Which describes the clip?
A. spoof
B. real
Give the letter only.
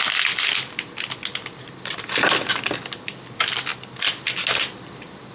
B